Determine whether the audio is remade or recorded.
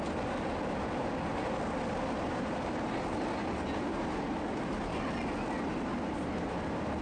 recorded